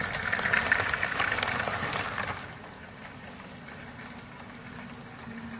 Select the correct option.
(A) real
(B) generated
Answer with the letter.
A